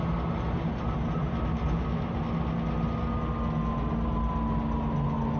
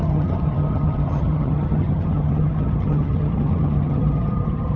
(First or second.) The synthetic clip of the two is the second